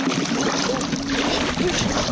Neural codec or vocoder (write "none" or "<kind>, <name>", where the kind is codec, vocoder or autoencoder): none